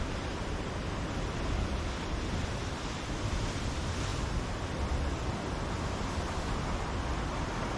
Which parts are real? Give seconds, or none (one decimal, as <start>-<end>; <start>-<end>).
0.0-7.8